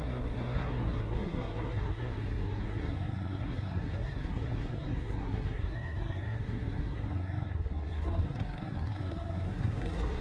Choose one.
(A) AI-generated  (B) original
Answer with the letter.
A